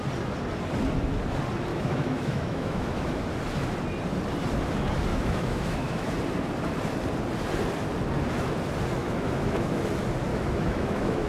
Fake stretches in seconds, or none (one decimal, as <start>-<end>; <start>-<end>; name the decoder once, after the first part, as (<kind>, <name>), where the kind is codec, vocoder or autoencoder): 1.7-3.2 (autoencoder, DAC-VAE); 5.1-6.1; 9.0-9.8; 10.3-11.3